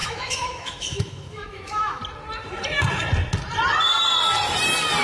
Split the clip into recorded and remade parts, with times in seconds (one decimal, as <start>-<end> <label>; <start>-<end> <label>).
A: 0.0-2.0 remade; 2.0-5.0 recorded